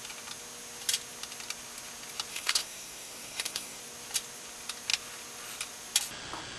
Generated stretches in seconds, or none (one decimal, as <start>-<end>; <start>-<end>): 2.3-3.8